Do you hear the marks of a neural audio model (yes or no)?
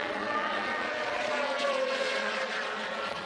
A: yes